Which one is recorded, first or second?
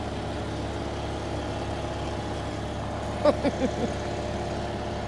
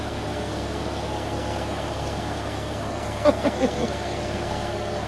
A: first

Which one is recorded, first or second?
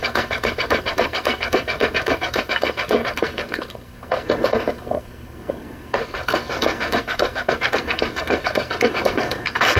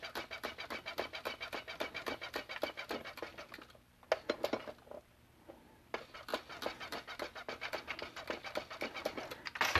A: second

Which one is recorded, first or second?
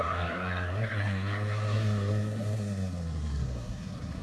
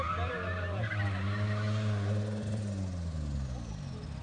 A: second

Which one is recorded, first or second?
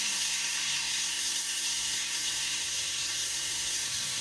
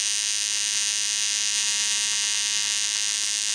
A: second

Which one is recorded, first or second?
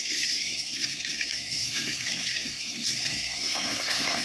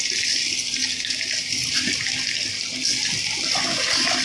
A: second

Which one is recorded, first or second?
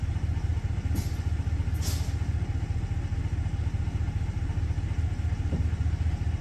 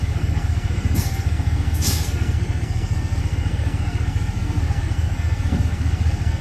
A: first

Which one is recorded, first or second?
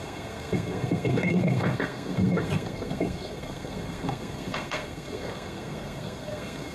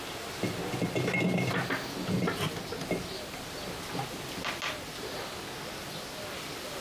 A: second